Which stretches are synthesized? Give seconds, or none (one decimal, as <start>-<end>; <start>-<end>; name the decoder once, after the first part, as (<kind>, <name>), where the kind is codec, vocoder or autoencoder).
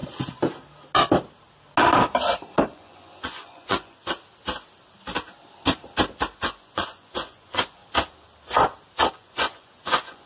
2.6-4.0 (vocoder, Vocos); 6.4-7.8; 9.1-10.3